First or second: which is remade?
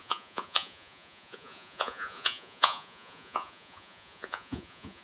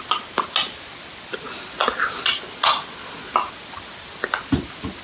first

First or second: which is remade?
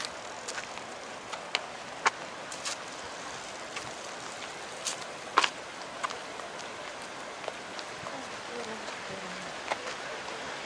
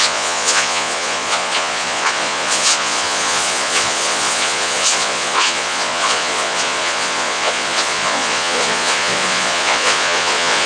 second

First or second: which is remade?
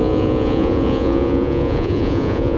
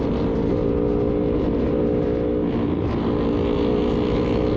first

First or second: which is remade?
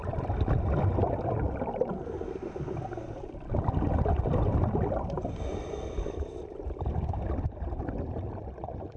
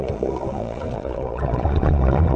second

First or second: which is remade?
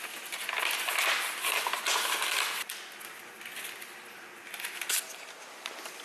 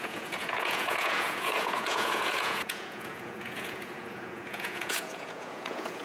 second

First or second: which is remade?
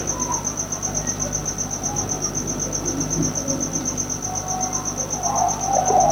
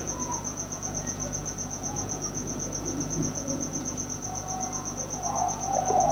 second